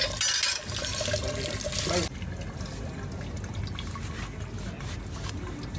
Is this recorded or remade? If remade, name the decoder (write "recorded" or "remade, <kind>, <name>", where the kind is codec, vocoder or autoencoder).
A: recorded